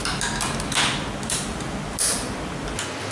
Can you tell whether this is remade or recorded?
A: recorded